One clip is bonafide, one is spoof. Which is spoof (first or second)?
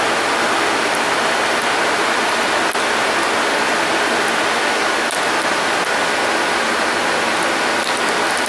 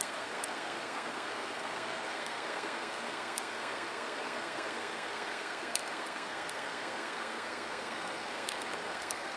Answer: second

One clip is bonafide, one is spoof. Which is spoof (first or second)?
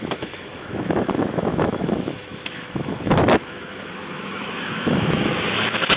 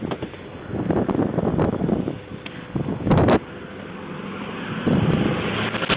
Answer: first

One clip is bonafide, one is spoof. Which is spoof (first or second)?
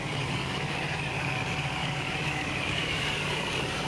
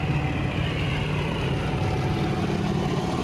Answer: first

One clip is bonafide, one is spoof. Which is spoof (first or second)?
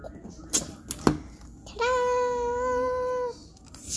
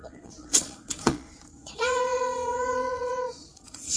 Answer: second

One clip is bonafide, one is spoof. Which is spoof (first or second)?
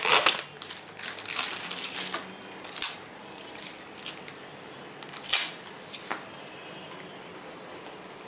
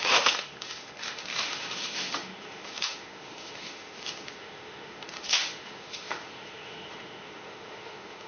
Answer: second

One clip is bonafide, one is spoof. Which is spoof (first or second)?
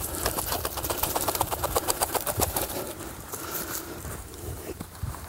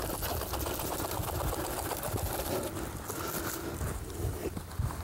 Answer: first